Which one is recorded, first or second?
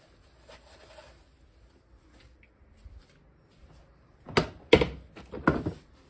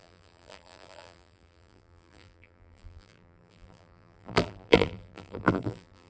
first